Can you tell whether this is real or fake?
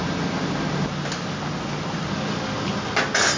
real